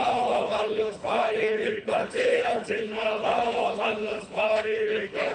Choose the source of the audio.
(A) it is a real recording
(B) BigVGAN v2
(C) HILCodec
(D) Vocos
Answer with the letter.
C